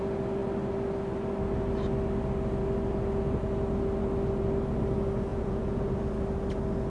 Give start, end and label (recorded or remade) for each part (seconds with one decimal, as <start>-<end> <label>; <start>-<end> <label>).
0.0-5.3 recorded; 5.3-6.0 remade; 6.0-6.9 recorded